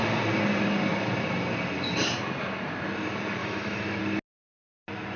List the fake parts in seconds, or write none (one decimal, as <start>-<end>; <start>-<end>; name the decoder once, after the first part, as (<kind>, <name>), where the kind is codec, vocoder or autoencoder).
3.4-4.0 (autoencoder, DAC-VAE)